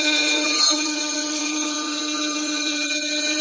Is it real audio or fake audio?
fake